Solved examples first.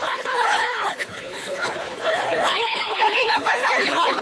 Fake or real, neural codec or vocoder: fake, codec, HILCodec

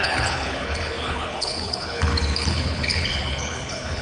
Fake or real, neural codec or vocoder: fake, codec, HILCodec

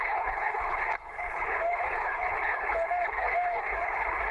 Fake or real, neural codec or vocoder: fake, codec, HILCodec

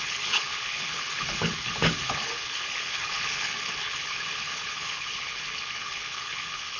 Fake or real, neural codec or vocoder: fake, codec, HILCodec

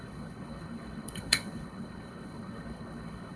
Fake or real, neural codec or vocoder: fake, codec, HILCodec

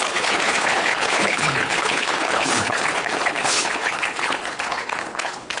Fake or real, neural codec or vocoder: fake, codec, HILCodec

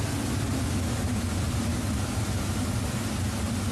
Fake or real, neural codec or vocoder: real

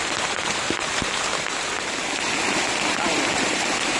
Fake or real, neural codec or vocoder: real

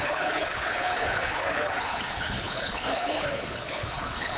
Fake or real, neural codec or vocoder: fake, codec, HILCodec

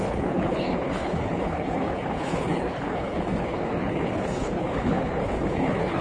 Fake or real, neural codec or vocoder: fake, codec, HILCodec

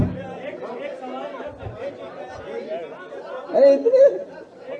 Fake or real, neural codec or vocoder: real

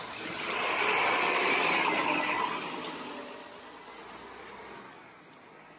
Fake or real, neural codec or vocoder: real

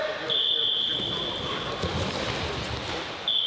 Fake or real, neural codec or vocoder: real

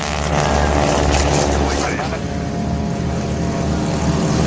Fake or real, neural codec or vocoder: real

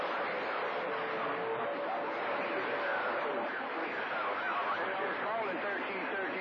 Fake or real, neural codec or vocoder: real